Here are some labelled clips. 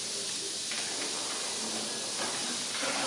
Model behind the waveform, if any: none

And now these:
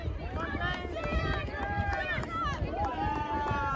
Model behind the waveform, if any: none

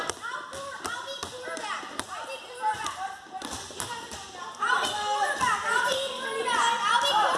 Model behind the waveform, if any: none